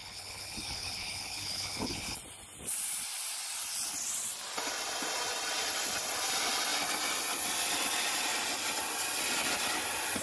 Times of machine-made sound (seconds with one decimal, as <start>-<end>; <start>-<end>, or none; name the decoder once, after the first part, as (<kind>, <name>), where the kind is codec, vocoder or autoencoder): 0.0-2.2 (codec, HILCodec)